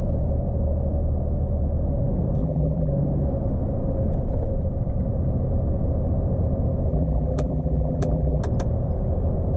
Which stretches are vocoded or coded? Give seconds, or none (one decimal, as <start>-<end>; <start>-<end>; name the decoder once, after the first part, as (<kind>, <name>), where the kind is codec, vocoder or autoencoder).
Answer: 2.4-2.9 (vocoder, BigVGAN v2); 6.9-8.4